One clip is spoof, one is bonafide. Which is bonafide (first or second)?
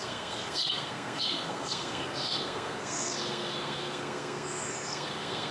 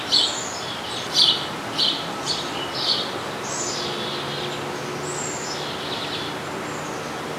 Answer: second